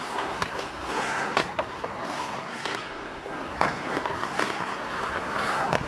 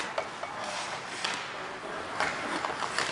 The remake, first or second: first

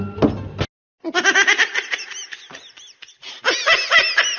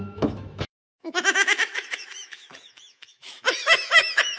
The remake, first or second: second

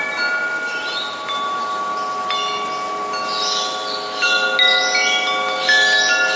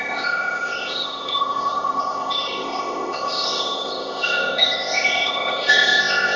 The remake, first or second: second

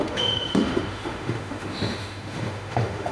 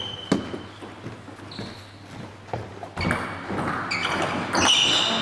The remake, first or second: first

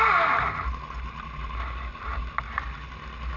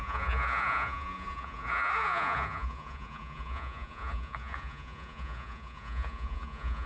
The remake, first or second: second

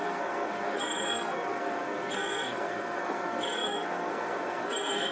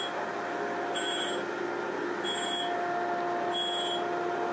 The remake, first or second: first